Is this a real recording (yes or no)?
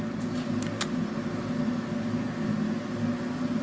yes